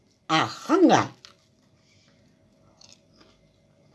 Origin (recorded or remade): recorded